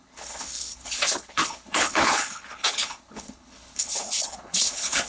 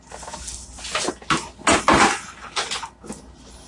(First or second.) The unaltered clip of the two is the second